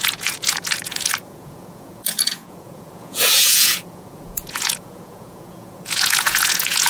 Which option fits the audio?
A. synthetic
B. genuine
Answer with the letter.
A